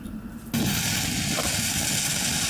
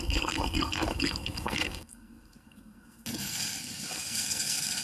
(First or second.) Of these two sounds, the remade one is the second